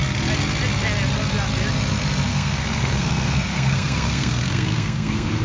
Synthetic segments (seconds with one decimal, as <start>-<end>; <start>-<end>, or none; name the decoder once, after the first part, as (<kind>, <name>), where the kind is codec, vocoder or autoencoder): 2.3-5.4 (codec, SNAC)